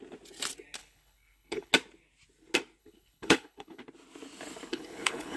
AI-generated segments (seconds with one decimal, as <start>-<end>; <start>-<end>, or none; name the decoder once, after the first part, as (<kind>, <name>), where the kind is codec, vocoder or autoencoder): 0.8-1.7 (codec, HILCodec); 2.8-3.8; 4.7-5.4